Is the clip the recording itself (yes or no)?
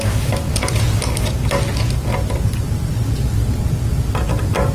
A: yes